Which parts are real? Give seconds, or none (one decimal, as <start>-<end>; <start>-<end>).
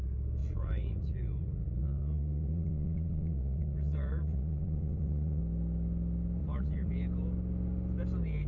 0.0-0.4; 5.4-6.4; 6.9-8.5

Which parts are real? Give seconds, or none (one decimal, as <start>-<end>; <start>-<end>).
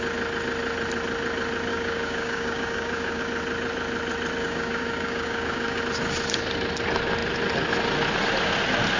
0.0-1.7; 3.2-4.4; 5.8-9.0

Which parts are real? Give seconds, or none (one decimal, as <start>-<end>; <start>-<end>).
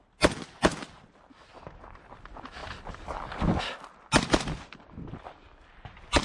0.0-6.2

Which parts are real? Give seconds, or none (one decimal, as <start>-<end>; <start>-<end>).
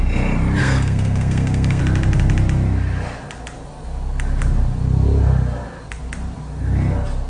0.0-0.6; 1.8-7.3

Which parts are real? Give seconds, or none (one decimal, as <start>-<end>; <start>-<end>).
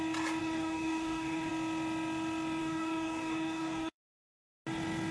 0.0-0.4; 1.5-2.6; 4.3-5.1